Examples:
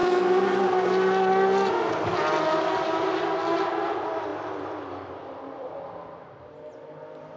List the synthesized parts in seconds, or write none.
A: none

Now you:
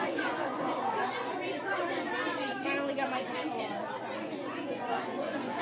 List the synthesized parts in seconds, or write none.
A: 0.0-1.4 (vocoder, Vocos); 4.0-5.6